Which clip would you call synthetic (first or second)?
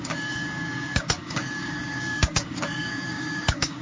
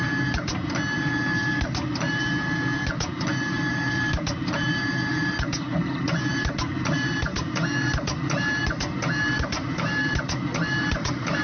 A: first